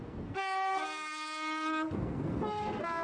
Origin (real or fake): fake